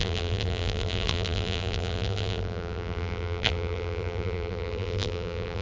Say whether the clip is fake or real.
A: fake